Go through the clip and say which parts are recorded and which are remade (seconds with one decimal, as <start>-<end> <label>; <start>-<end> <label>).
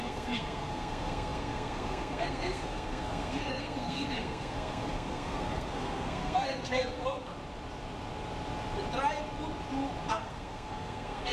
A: 0.0-7.3 remade; 7.3-10.1 recorded; 10.1-11.3 remade